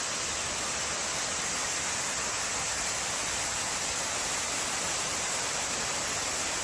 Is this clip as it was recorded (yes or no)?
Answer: no